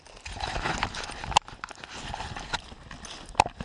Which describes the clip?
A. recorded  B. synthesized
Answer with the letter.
A